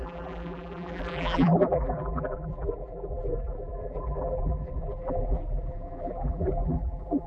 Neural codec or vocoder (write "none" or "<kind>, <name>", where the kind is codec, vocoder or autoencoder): vocoder, BigVGAN v2